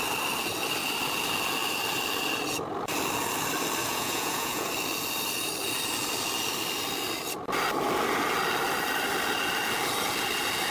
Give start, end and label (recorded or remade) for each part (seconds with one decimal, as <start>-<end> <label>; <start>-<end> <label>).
0.0-3.8 recorded; 3.8-4.7 remade; 4.7-10.7 recorded